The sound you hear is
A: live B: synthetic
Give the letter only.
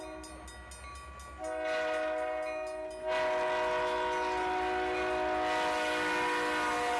A